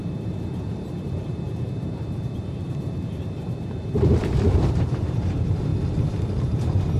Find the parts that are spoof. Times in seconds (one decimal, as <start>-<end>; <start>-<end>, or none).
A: 0.0-5.7